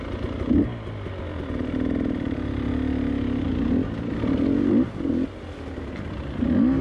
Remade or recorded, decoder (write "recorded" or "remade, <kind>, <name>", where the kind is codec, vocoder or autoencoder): recorded